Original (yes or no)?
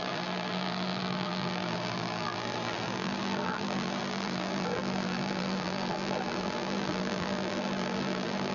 no